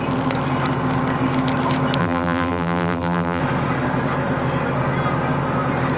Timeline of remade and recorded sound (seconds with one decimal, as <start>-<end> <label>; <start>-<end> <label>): 0.0-2.0 recorded; 2.0-3.4 remade; 3.4-6.0 recorded

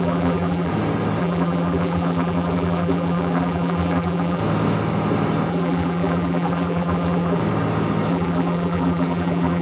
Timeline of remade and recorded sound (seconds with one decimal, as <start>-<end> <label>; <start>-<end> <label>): 0.0-0.7 remade; 0.7-1.2 recorded; 1.2-4.4 remade; 4.4-5.5 recorded; 5.5-7.4 remade; 7.4-8.1 recorded; 8.1-9.6 remade

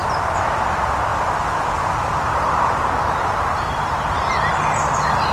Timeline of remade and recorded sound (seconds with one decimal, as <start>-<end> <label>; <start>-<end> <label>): 0.0-1.1 recorded; 1.1-4.3 remade; 4.3-5.3 recorded